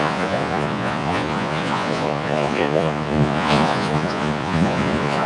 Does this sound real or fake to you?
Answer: fake